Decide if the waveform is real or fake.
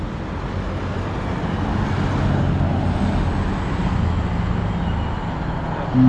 real